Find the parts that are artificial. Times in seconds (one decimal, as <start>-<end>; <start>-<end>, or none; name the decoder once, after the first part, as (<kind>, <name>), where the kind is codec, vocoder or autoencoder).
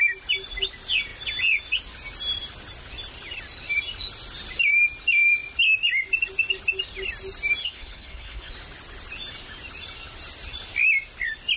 7.6-8.5 (codec, HILCodec)